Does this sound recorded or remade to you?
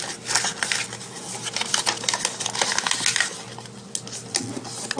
recorded